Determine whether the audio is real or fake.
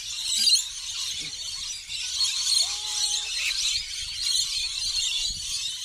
real